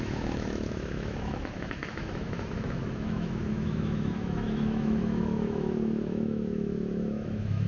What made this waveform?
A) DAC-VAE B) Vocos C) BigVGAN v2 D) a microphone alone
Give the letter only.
A